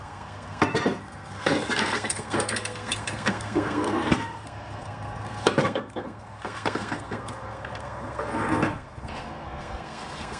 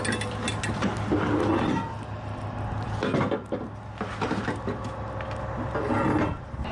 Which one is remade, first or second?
first